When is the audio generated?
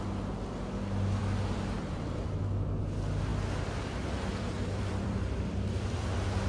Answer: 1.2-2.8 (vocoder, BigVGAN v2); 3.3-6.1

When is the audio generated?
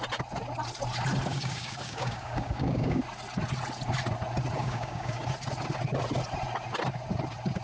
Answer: 1.3-3.0 (codec, DAC); 4.6-5.2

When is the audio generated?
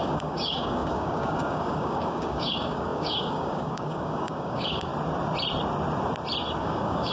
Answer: 0.0-4.9 (codec, DAC); 6.6-7.1